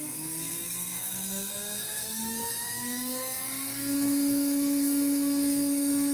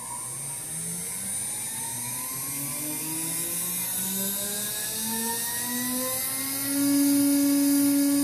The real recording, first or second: second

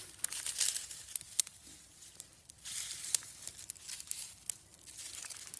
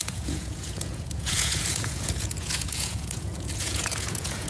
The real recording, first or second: first